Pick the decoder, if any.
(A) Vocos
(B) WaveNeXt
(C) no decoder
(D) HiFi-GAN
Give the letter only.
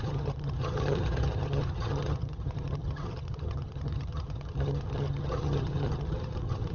D